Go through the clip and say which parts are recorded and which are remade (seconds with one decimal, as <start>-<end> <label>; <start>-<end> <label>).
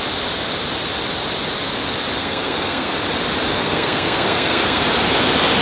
0.0-2.2 recorded; 2.2-2.9 remade; 2.9-3.5 recorded; 3.5-4.8 remade; 4.8-5.6 recorded